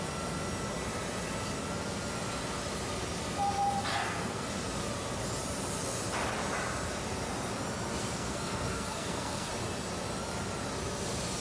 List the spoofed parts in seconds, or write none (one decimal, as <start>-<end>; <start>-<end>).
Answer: 3.9-4.5; 8.0-9.5